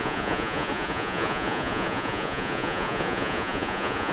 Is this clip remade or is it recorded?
remade